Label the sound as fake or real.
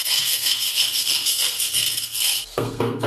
fake